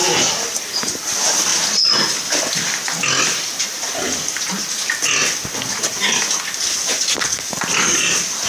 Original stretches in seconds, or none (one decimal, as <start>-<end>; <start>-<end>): 0.6-8.5